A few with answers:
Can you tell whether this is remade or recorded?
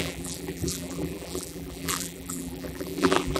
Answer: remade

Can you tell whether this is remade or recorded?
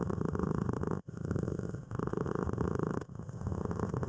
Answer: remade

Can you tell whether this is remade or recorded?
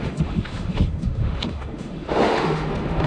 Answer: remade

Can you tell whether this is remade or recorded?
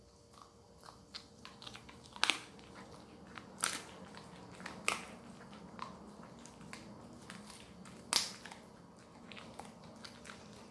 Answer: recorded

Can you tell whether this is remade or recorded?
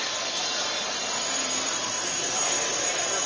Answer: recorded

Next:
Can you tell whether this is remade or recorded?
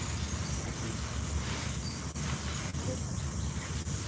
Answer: recorded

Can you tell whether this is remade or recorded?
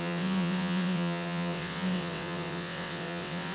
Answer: remade